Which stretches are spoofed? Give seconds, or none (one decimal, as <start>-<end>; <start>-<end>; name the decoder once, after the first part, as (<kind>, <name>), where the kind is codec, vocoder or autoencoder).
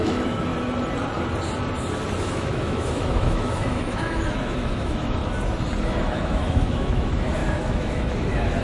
0.0-0.5 (autoencoder, DAC-VAE); 2.2-5.2; 5.8-8.6